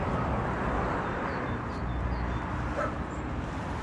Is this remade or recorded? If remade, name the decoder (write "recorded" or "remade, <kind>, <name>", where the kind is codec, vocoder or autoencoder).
recorded